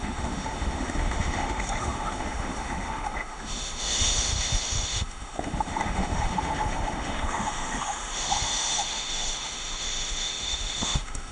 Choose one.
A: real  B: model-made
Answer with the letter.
B